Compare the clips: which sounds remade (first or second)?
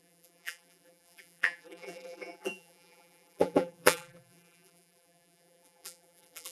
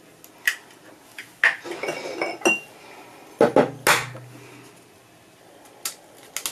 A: first